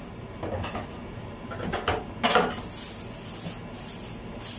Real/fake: real